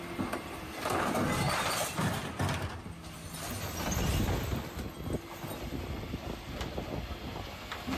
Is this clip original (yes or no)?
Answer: yes